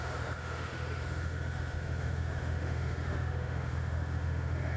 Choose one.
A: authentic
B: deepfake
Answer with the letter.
B